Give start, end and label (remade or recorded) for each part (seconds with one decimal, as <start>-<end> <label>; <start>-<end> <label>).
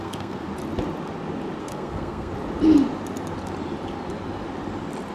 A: 0.0-0.5 remade; 0.5-1.6 recorded; 1.6-2.3 remade; 2.3-5.1 recorded